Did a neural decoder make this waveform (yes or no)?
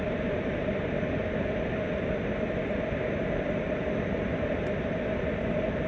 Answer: no